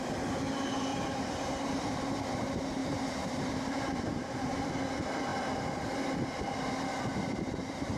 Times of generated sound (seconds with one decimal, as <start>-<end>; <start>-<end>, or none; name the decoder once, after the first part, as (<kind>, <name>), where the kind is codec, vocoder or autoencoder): 0.9-2.2 (vocoder, BigVGAN v2); 2.8-4.7